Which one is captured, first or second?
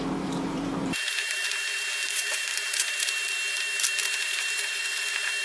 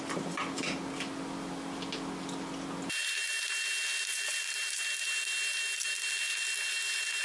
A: second